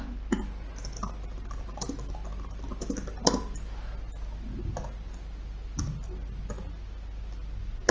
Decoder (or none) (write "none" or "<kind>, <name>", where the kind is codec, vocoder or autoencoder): none